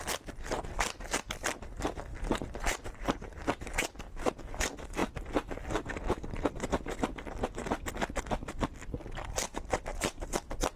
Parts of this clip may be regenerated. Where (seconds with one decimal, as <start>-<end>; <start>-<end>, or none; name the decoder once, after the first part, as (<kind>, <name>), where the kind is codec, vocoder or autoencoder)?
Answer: 2.1-4.3 (vocoder, BigVGAN v2); 9.9-10.4